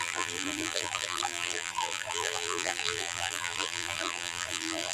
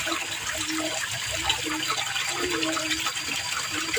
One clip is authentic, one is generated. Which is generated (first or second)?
first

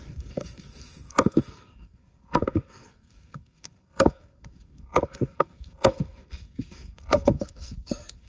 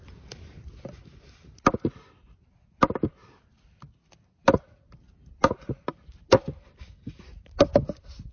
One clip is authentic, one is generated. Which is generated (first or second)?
first